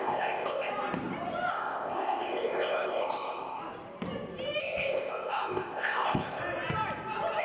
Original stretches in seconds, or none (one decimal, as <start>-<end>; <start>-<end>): 0.7-1.5; 3.6-4.6; 6.4-7.4